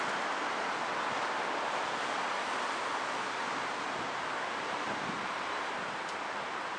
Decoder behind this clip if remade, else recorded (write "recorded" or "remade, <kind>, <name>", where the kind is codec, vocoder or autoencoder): recorded